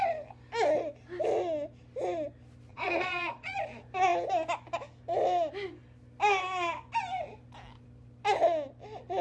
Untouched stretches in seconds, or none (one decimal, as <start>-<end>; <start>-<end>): 0.0-2.7; 3.6-9.2